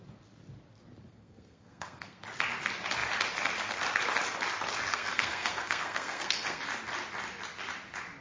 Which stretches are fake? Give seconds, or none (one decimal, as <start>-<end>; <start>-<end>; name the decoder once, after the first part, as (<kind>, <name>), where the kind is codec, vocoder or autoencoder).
1.1-2.2 (codec, SNAC); 4.9-6.6